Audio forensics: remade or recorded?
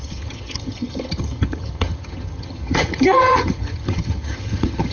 remade